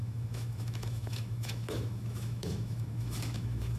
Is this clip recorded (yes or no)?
no